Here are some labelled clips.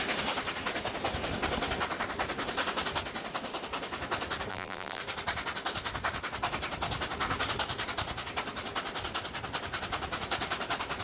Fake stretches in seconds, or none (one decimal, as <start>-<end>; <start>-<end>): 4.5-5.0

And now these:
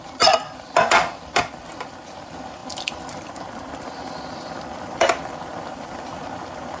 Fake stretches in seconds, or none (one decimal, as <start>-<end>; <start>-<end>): 0.0-6.8

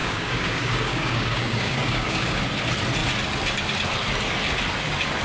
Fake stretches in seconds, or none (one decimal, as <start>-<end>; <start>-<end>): 0.0-2.4